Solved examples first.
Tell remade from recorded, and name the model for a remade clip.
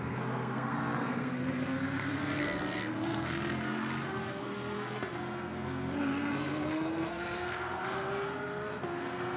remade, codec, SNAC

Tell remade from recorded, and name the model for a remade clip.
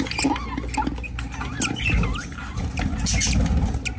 recorded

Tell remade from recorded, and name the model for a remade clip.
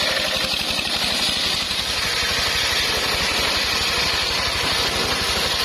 recorded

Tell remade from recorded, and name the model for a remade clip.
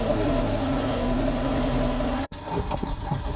remade, codec, SNAC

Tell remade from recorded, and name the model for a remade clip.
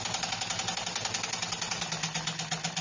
recorded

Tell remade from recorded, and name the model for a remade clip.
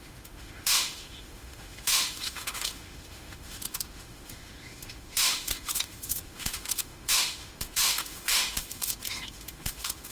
remade, autoencoder, DAC-VAE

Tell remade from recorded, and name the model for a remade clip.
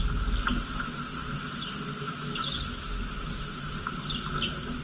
recorded